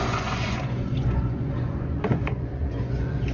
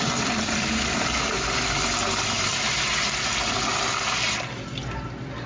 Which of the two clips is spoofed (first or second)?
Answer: first